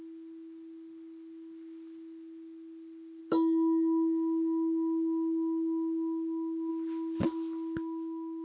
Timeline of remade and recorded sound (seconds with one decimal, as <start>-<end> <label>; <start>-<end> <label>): 0.0-8.4 recorded